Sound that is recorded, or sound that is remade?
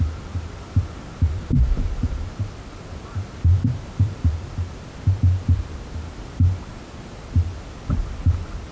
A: recorded